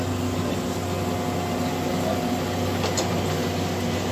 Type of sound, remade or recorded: recorded